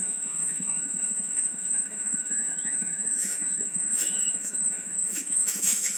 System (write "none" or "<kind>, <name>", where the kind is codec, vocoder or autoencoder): autoencoder, DAC-VAE